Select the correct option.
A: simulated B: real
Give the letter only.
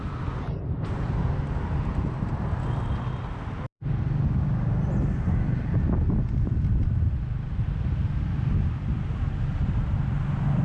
B